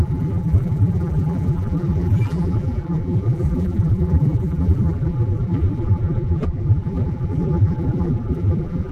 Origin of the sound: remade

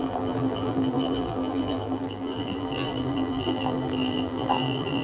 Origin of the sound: remade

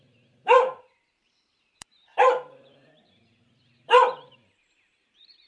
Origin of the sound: remade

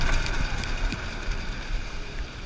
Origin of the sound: remade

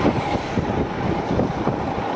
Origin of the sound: recorded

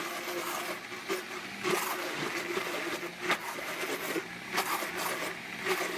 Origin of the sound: recorded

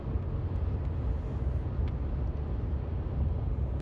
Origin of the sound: recorded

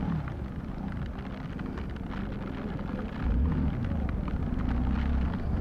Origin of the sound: recorded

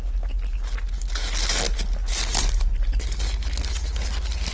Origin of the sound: recorded